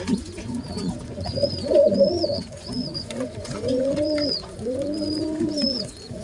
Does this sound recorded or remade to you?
remade